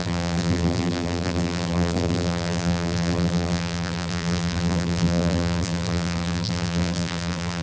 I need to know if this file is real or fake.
fake